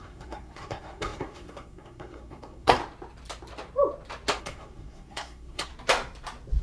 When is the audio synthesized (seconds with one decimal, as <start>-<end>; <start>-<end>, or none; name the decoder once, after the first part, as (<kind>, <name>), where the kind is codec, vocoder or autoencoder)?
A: 0.0-2.8 (codec, SNAC); 4.4-5.7